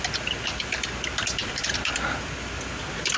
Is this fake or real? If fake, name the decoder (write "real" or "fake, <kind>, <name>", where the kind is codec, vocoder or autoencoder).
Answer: real